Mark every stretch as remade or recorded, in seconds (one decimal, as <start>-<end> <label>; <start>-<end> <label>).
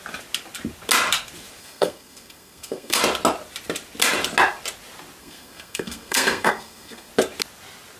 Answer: 0.0-1.6 recorded; 1.6-3.0 remade; 3.0-5.2 recorded; 5.2-7.1 remade; 7.1-8.0 recorded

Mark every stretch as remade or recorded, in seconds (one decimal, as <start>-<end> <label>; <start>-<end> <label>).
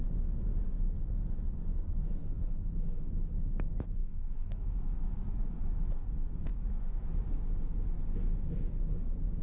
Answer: 0.0-2.2 recorded; 2.2-3.2 remade; 3.2-4.0 recorded; 4.0-5.9 remade; 5.9-6.5 recorded; 6.5-7.3 remade; 7.3-9.4 recorded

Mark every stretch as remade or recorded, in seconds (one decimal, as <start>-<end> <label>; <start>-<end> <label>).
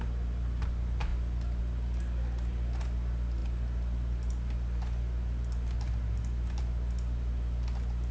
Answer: 0.0-8.1 recorded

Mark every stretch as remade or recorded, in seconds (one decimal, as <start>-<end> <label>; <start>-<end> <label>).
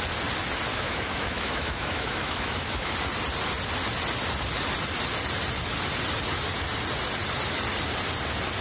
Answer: 0.0-0.7 recorded; 0.7-2.9 remade; 2.9-8.6 recorded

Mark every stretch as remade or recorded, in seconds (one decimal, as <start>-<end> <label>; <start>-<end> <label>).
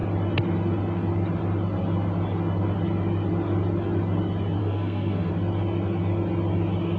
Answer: 0.0-4.6 recorded; 4.6-5.3 remade; 5.3-7.0 recorded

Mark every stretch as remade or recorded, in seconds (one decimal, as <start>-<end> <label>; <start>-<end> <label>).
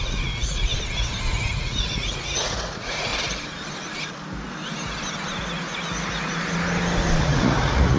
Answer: 0.0-0.7 remade; 0.7-1.5 recorded; 1.5-3.1 remade; 3.1-7.2 recorded; 7.2-8.0 remade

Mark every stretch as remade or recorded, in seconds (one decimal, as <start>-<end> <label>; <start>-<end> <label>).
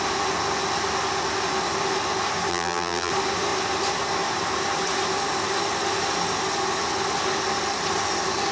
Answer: 0.0-2.5 recorded; 2.5-3.1 remade; 3.1-8.5 recorded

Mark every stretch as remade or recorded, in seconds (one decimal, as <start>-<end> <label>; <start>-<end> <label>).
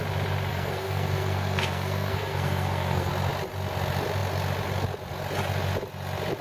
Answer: 0.0-0.5 recorded; 0.5-3.1 remade; 3.1-6.4 recorded